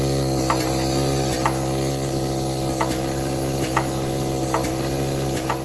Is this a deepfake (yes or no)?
no